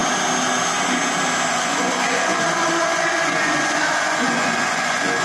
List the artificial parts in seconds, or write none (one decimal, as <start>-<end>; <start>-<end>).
1.5-5.2

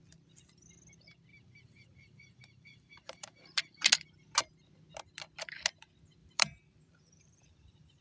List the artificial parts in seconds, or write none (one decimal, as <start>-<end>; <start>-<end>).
1.3-3.6; 6.2-8.0

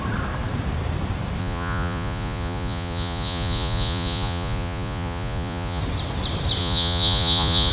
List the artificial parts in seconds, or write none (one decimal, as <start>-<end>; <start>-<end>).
1.4-5.8; 6.6-7.7

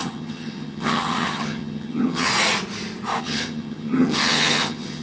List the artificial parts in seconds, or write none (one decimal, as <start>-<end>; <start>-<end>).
0.0-2.3; 3.2-5.0

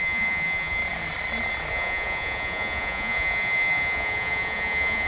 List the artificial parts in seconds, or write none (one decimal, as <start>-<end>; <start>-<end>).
0.0-0.8; 1.7-5.1